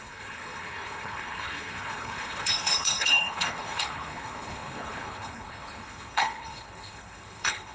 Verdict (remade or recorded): remade